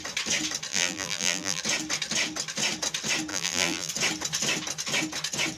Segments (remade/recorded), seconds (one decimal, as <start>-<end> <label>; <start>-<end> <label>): 0.0-0.7 recorded; 0.7-1.6 remade; 1.6-3.3 recorded; 3.3-3.9 remade; 3.9-5.6 recorded